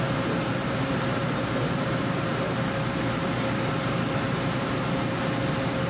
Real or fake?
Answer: fake